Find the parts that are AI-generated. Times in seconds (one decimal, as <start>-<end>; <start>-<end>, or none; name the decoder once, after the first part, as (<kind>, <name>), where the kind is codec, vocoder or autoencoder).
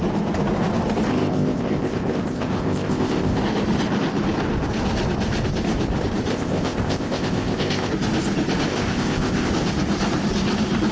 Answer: 1.1-3.4 (codec, ZipCodec); 6.3-7.9; 8.7-9.5